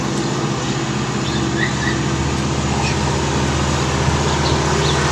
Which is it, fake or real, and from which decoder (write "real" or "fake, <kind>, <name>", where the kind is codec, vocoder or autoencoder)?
real